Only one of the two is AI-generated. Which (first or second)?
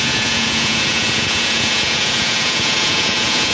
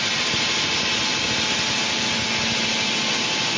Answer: first